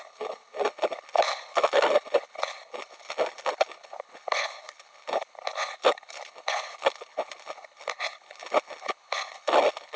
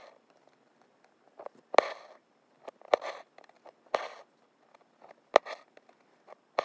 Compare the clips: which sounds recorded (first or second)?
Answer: second